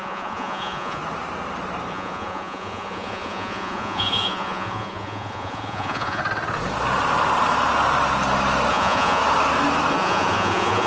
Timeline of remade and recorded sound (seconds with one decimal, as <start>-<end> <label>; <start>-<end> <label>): 0.0-1.0 remade; 1.0-1.9 recorded; 1.9-6.2 remade; 6.2-8.7 recorded; 8.7-9.2 remade; 9.2-9.9 recorded; 9.9-10.9 remade